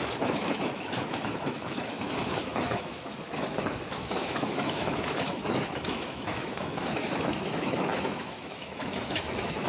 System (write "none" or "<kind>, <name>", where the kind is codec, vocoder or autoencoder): autoencoder, DAC-VAE